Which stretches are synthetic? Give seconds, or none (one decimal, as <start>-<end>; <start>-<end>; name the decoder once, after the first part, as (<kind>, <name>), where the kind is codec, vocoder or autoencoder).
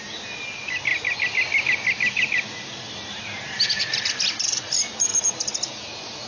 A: none